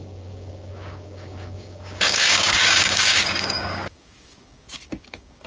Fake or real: fake